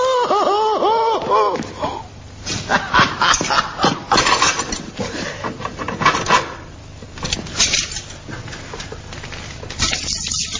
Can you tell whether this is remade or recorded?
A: recorded